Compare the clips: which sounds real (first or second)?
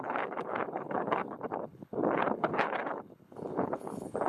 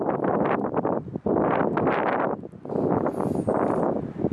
second